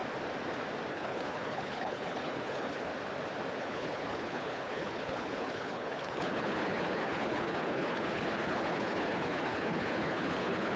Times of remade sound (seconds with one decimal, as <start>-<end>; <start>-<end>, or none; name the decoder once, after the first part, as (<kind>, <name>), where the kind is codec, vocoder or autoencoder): 0.9-2.9 (codec, HILCodec); 3.6-10.8